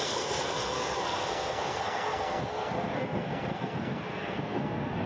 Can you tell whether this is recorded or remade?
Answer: remade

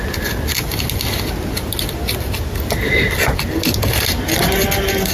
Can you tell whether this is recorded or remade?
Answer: recorded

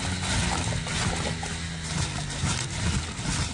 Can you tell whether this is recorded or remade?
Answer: recorded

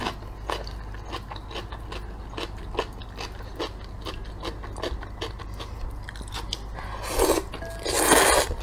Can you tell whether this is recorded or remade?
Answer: recorded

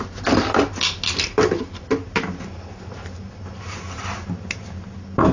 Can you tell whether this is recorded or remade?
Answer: recorded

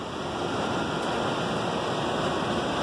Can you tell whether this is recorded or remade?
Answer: recorded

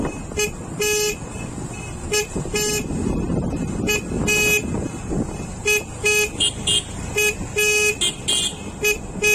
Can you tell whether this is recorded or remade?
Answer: recorded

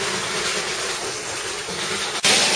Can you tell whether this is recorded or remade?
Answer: recorded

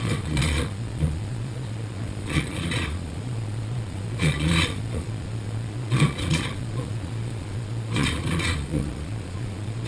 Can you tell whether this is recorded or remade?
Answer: remade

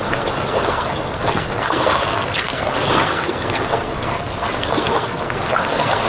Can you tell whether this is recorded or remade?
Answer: remade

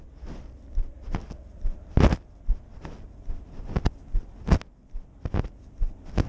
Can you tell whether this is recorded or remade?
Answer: recorded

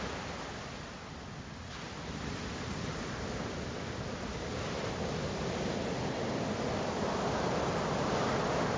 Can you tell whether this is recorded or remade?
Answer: recorded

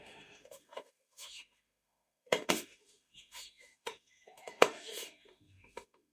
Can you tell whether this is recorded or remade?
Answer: remade